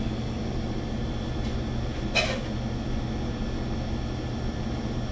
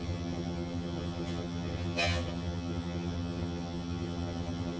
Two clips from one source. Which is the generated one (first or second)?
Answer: second